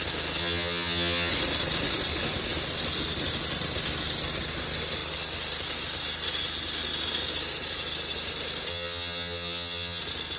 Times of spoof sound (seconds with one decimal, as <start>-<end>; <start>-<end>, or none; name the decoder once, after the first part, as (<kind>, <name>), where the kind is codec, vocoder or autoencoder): 0.4-1.3 (vocoder, HiFi-GAN); 8.7-10.0